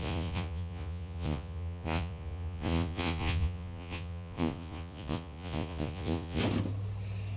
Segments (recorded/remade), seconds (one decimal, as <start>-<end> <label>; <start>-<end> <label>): 0.0-6.4 remade; 6.4-7.4 recorded